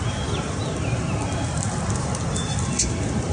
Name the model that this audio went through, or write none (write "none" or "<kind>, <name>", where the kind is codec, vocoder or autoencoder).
none